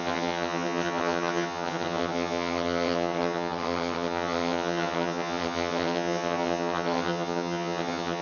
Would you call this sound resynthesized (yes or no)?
yes